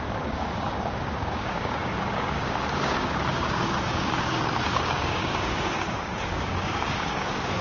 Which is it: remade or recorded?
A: remade